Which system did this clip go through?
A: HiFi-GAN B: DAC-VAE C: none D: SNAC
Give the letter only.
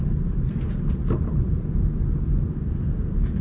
C